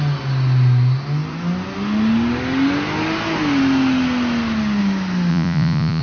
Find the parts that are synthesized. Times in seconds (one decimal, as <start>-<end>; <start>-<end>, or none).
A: 5.3-6.0